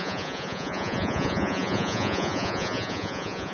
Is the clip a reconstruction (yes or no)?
yes